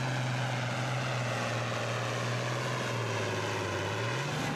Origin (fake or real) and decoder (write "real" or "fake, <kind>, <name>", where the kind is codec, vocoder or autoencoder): real